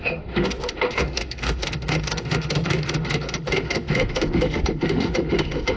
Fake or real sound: fake